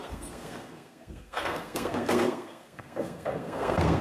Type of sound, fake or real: fake